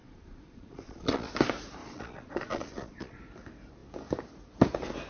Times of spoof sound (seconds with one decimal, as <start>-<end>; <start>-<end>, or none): 0.0-1.3; 1.8-3.2